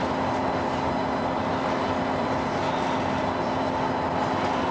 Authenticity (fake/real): real